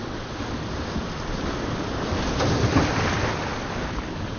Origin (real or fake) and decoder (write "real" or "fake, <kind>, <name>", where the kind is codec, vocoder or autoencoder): real